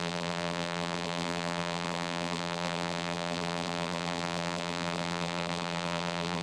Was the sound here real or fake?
fake